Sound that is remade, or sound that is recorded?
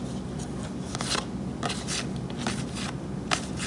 recorded